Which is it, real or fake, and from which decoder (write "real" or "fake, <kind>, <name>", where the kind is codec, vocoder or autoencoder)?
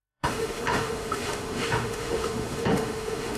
fake, autoencoder, DAC-VAE